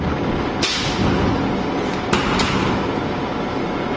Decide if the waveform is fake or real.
real